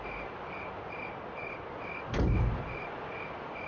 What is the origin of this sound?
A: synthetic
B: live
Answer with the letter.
B